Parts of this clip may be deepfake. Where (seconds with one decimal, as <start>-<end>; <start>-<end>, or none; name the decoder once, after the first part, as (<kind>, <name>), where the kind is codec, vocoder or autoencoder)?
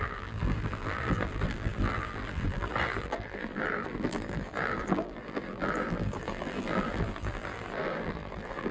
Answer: 0.0-8.7 (vocoder, BigVGAN v2)